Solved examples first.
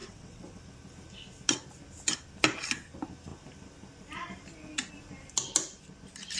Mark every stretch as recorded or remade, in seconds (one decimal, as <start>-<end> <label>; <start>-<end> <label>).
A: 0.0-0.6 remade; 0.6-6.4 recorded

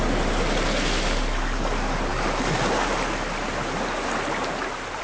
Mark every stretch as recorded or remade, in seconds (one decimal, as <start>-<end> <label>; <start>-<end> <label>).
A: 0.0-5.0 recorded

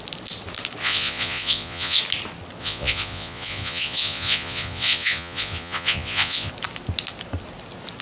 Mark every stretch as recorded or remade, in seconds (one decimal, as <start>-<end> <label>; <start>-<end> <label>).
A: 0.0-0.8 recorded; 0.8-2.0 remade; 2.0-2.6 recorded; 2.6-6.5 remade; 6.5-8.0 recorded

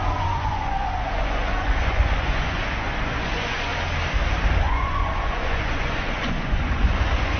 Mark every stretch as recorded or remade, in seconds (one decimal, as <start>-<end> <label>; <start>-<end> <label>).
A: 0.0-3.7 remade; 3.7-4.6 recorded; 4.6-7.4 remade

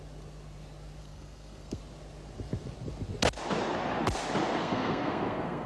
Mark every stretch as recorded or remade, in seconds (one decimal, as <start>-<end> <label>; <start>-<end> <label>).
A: 0.0-1.0 recorded; 1.0-1.8 remade; 1.8-4.6 recorded; 4.6-5.7 remade

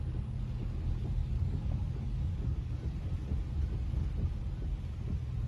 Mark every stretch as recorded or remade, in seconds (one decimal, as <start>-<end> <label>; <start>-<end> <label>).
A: 0.0-1.2 recorded; 1.2-2.7 remade; 2.7-5.5 recorded

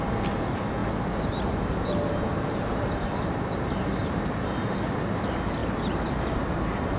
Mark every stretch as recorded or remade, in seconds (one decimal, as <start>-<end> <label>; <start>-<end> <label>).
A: 0.0-0.8 recorded; 0.8-5.0 remade; 5.0-5.6 recorded; 5.6-6.3 remade; 6.3-7.0 recorded